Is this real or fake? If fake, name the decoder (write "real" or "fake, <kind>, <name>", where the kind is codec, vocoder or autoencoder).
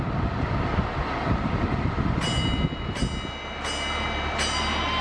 real